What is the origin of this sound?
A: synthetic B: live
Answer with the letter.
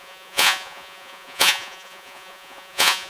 A